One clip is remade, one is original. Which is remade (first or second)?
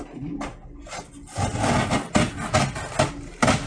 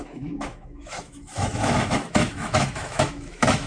second